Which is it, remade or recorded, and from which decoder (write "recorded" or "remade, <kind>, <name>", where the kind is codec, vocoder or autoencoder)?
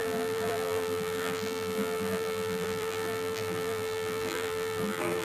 remade, vocoder, BigVGAN v2